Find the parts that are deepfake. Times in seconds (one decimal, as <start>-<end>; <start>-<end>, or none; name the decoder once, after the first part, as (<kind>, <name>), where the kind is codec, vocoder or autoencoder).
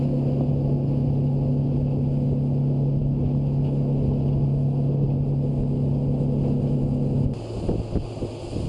none